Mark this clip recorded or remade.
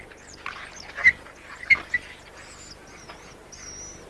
recorded